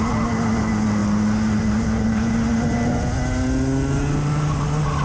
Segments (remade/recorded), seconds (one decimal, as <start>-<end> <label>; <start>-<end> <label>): 0.0-5.0 recorded